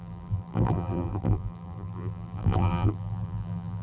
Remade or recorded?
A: remade